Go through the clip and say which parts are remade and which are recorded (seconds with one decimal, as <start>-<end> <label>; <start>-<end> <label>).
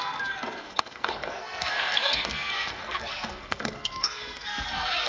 0.0-5.1 remade